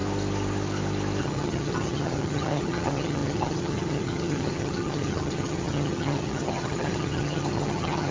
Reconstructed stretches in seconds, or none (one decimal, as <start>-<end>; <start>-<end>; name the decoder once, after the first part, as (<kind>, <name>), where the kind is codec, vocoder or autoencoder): 1.2-8.1 (vocoder, HiFi-GAN)